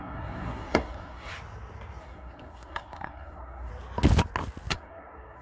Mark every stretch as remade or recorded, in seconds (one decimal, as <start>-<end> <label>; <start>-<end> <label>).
0.0-1.3 remade; 1.3-2.0 recorded; 2.0-3.7 remade; 3.7-4.7 recorded; 4.7-5.4 remade